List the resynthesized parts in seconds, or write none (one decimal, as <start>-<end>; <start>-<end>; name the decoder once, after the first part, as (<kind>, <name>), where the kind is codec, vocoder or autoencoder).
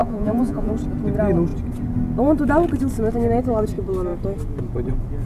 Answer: 0.0-0.7 (vocoder, Vocos)